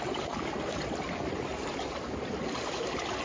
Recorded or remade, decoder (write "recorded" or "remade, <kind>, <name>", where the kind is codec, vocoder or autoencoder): recorded